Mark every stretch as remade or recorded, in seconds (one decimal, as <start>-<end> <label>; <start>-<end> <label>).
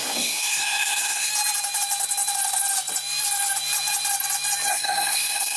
0.0-1.3 remade; 1.3-4.7 recorded; 4.7-5.6 remade